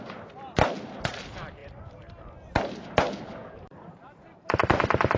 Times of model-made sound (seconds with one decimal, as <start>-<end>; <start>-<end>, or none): 1.6-2.8; 3.4-4.6